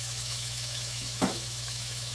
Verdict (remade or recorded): remade